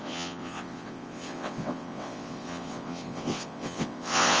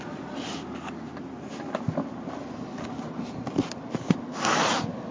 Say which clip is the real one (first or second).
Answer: second